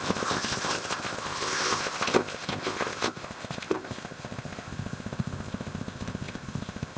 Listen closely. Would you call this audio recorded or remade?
remade